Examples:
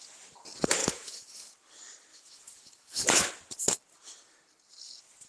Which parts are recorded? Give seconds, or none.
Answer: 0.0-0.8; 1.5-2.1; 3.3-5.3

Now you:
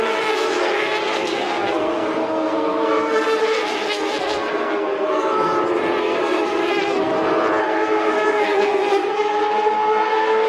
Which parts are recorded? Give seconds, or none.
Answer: 5.5-6.0; 7.1-7.6